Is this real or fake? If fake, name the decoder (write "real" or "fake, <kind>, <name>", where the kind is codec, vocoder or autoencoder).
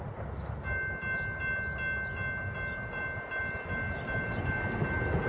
real